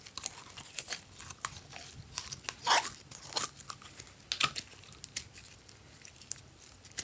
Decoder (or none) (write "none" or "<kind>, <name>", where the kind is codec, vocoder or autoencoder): none